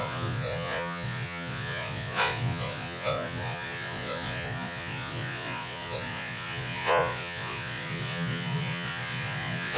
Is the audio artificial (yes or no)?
yes